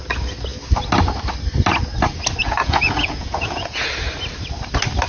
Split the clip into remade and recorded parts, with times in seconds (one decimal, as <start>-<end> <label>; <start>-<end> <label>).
0.0-2.4 recorded; 2.4-3.9 remade; 3.9-5.1 recorded